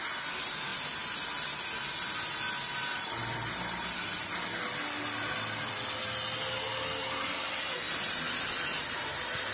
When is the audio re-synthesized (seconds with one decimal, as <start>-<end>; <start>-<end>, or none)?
none